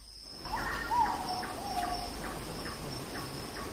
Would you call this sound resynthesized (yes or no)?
no